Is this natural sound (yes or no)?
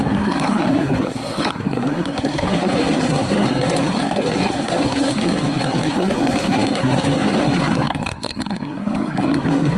no